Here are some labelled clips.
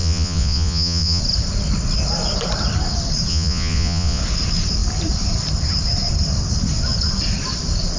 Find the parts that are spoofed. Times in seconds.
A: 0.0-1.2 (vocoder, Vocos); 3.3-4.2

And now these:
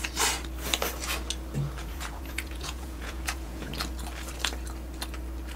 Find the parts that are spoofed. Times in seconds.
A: 1.8-3.7 (vocoder, Vocos)

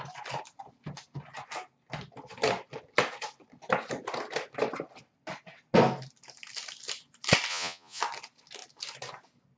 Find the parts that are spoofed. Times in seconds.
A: 7.5-8.0 (vocoder, Vocos)

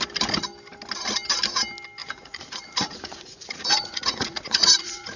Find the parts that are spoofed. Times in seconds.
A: 2.0-5.2 (vocoder, Vocos)